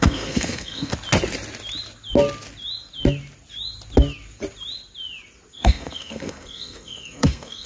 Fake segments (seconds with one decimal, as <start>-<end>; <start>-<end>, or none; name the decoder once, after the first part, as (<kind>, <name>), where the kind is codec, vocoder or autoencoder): 0.0-0.9 (codec, SNAC); 5.5-7.7